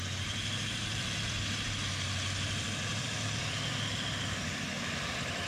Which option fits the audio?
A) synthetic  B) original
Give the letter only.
A